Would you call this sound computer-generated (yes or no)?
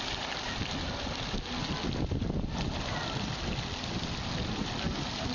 no